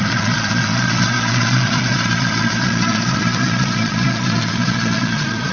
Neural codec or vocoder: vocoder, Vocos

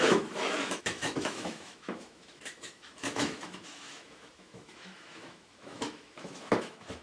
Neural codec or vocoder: autoencoder, DAC-VAE